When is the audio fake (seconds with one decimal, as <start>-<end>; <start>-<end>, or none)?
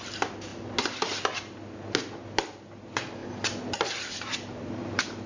3.2-5.3